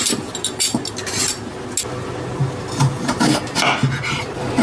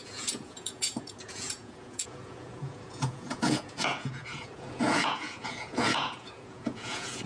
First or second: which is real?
first